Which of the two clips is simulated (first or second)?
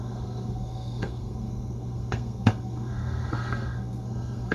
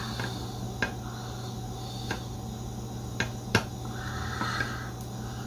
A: first